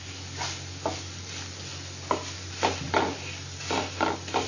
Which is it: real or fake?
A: real